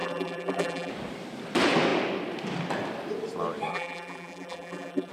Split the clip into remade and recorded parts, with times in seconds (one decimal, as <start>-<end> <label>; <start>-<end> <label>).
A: 0.0-0.9 remade; 0.9-3.7 recorded; 3.7-5.1 remade

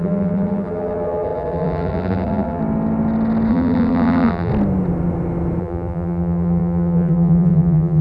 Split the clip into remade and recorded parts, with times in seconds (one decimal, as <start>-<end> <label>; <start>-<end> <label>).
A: 0.0-2.6 remade; 2.6-3.5 recorded; 3.5-4.5 remade; 4.5-5.6 recorded; 5.6-8.0 remade

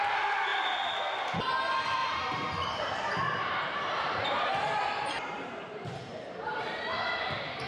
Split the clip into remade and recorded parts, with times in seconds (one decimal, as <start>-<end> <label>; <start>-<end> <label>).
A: 0.0-2.0 recorded; 2.0-6.6 remade; 6.6-7.7 recorded